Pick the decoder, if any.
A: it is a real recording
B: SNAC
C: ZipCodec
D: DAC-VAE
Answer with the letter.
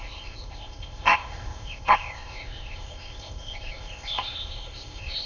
C